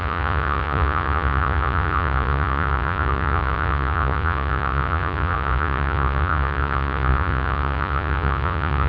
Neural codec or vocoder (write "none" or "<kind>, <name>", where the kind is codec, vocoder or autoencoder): vocoder, Vocos